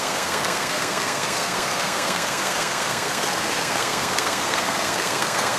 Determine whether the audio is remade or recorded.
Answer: remade